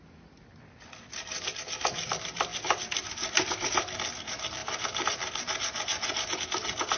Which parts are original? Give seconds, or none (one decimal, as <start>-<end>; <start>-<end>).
0.0-7.0